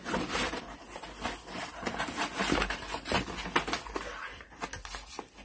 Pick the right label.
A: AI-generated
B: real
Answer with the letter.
B